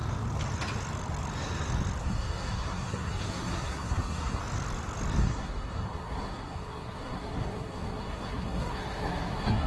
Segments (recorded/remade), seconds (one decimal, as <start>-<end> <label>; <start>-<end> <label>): 0.0-2.0 recorded; 2.0-4.4 remade; 4.4-5.2 recorded; 5.2-9.7 remade